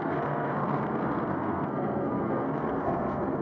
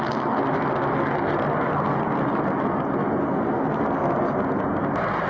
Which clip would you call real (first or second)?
second